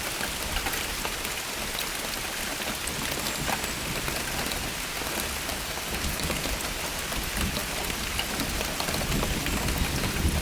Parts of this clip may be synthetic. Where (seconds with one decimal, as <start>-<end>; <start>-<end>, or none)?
5.5-6.4